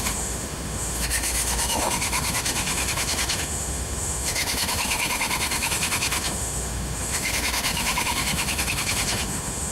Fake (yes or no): yes